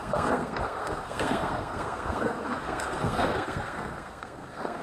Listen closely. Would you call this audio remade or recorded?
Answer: remade